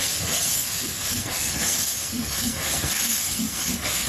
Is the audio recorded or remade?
remade